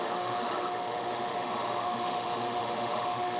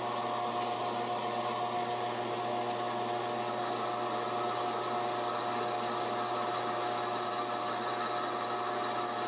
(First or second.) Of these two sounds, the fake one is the first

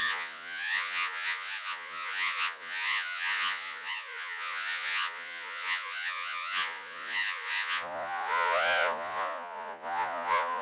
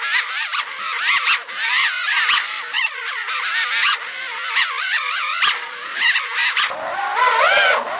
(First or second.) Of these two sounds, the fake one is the first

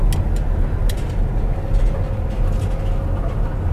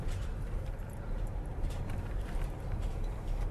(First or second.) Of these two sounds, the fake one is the second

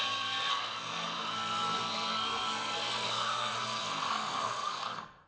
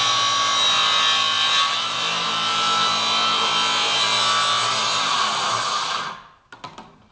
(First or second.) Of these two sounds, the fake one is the first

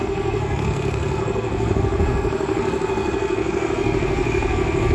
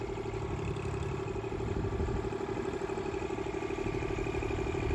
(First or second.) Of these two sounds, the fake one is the first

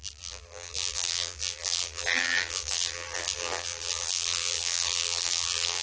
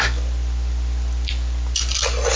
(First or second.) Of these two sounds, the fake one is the first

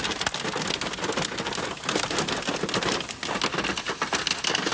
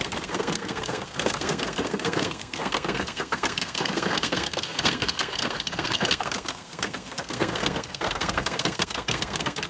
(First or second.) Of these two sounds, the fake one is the second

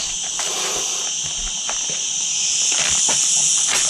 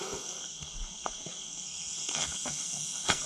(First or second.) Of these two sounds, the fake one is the second